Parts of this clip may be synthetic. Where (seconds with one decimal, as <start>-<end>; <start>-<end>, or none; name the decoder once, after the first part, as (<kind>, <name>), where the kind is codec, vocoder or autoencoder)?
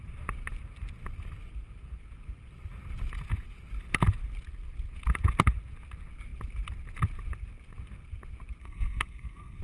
8.6-9.6 (codec, SNAC)